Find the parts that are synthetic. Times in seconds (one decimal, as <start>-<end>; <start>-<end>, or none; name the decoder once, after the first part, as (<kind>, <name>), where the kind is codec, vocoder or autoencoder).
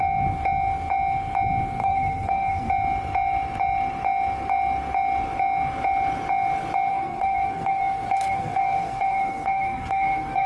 1.8-2.7 (codec, SNAC); 6.9-10.5